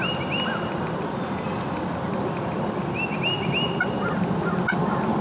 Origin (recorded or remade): recorded